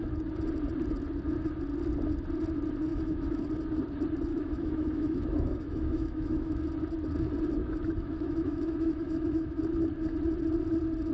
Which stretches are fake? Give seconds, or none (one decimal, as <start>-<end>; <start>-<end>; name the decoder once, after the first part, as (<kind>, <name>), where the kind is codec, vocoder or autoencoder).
2.9-3.5 (autoencoder, DAC-VAE); 4.3-6.6; 7.6-9.6